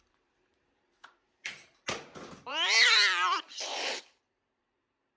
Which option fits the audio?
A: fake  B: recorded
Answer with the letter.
A